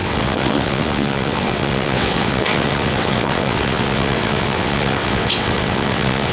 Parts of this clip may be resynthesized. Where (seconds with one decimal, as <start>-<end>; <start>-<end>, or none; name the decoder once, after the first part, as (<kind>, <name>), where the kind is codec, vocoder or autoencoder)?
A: 0.0-6.3 (vocoder, WaveNeXt)